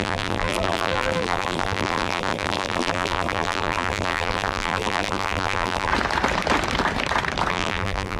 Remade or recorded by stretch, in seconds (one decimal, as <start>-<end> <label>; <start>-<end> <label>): 0.0-5.9 remade; 5.9-7.5 recorded; 7.5-8.2 remade